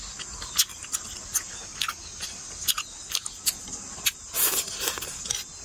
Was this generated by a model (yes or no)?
no